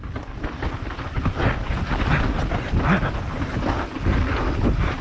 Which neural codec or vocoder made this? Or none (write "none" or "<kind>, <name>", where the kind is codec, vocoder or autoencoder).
none